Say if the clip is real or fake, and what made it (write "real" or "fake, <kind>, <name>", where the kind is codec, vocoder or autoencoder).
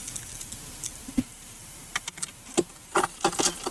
real